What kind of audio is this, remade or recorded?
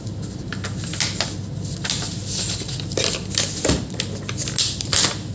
recorded